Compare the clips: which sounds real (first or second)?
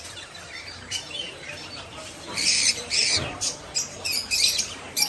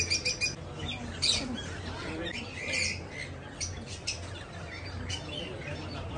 second